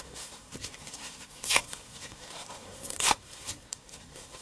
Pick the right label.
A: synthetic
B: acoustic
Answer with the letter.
A